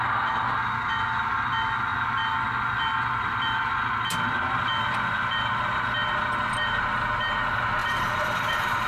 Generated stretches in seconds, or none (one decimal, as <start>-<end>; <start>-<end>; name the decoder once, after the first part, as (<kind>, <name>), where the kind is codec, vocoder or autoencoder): 7.8-8.9 (vocoder, BigVGAN v2)